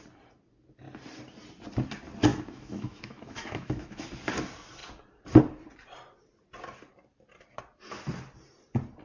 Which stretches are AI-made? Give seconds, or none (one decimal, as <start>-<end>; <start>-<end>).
2.3-4.1